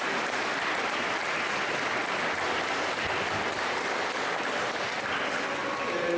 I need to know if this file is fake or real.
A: real